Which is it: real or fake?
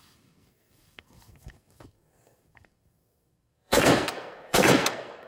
fake